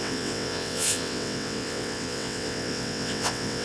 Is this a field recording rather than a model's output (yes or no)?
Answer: no